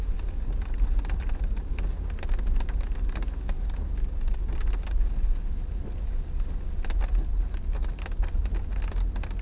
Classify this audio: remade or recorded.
recorded